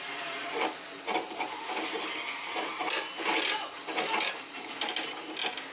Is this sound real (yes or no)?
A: yes